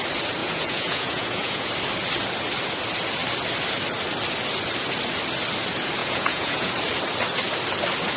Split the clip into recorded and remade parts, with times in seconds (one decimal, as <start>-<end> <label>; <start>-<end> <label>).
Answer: 0.0-0.4 recorded; 0.4-1.7 remade; 1.7-6.0 recorded; 6.0-6.7 remade; 6.7-8.2 recorded